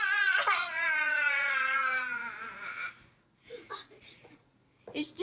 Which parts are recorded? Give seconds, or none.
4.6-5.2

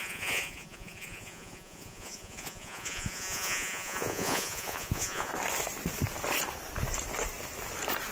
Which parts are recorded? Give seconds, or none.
5.3-8.1

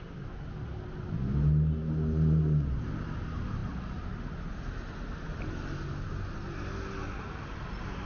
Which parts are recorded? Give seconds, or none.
0.0-8.1